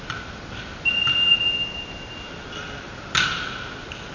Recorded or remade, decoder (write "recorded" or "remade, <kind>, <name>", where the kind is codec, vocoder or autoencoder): recorded